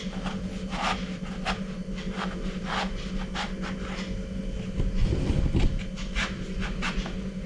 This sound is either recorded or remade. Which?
recorded